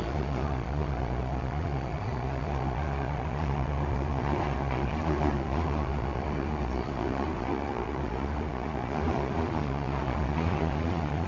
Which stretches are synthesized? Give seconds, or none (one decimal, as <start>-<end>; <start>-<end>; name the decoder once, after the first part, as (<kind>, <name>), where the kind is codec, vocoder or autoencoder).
0.0-11.3 (vocoder, Vocos)